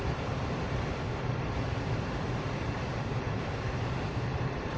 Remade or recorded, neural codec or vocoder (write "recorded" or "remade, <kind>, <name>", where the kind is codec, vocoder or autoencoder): remade, vocoder, BigVGAN v2